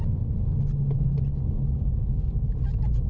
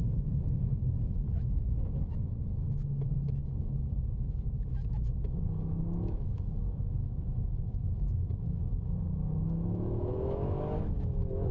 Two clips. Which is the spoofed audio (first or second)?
second